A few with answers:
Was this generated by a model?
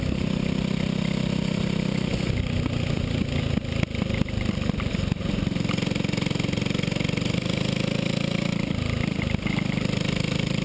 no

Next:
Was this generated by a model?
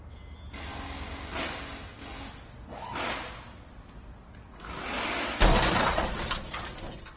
no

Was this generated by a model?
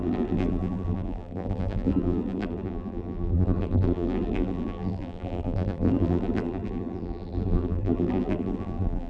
yes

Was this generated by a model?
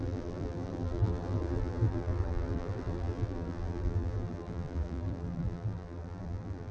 yes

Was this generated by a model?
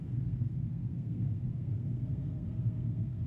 yes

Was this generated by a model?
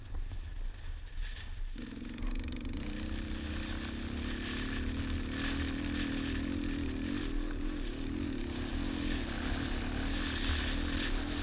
no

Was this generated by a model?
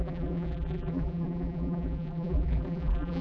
yes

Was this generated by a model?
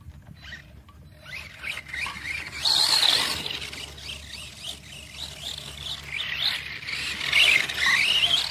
no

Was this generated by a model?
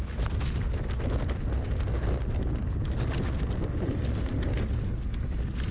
no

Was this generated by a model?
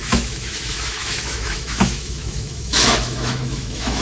yes